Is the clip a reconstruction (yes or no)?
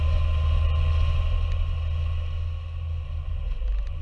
no